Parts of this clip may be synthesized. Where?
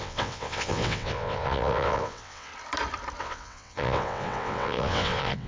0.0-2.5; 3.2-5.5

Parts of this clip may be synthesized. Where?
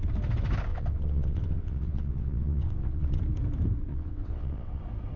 0.7-3.2; 3.9-4.8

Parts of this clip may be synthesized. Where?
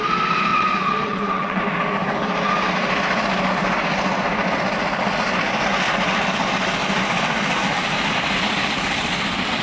0.5-1.6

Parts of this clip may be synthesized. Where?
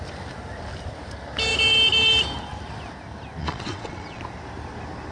3.4-4.2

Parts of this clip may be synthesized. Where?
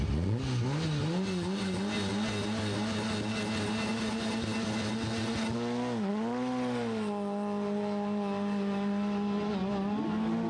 none